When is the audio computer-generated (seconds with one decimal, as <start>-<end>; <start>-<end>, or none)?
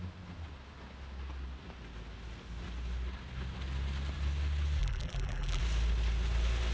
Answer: 4.8-5.6